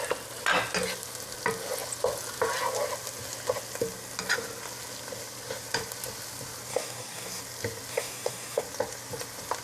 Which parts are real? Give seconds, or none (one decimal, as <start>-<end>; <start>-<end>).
0.0-6.7; 7.4-7.9; 8.6-9.6

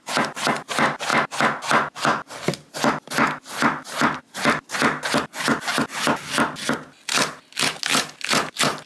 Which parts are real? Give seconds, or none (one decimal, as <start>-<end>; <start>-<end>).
0.0-8.9